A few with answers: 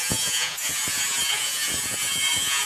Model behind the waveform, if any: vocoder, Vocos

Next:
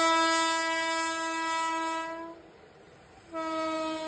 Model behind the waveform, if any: none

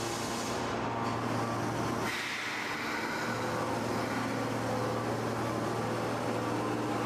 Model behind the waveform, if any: none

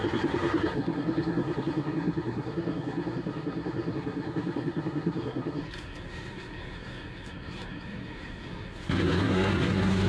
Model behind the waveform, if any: codec, SNAC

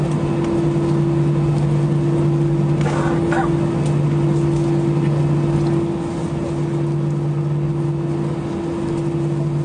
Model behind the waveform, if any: none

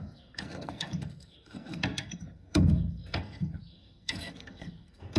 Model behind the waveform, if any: codec, SNAC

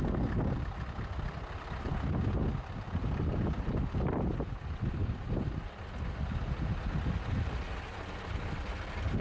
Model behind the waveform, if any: none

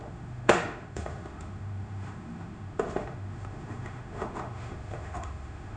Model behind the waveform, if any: autoencoder, DAC-VAE